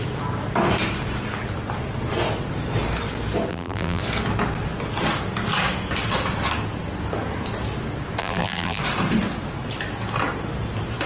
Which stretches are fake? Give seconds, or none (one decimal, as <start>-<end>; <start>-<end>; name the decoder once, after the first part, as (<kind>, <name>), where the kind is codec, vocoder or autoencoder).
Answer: 3.5-4.0 (vocoder, BigVGAN v2); 8.2-8.8